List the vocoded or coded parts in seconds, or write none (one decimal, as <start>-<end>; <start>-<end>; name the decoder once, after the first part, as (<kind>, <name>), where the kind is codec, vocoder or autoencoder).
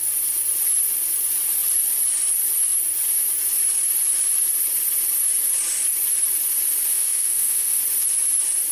6.9-7.8 (autoencoder, DAC-VAE)